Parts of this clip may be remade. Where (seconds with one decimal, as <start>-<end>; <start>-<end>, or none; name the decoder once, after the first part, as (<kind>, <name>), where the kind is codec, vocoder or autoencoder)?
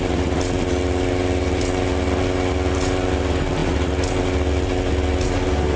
none